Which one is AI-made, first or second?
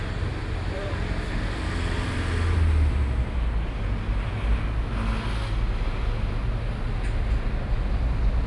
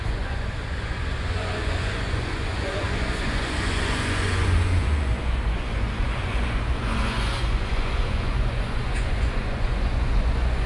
second